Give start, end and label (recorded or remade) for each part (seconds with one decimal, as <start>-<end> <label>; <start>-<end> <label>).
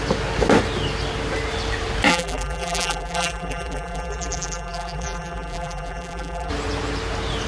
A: 0.0-2.1 recorded; 2.1-6.5 remade; 6.5-7.5 recorded